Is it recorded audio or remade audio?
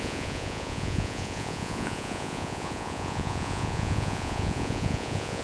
remade